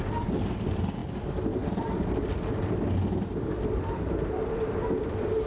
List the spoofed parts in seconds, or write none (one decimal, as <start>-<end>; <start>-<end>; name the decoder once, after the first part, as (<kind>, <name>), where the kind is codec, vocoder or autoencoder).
none